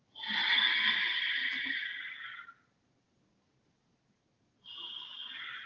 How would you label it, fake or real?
real